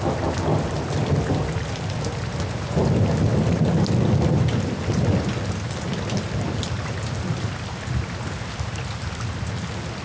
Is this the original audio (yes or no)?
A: yes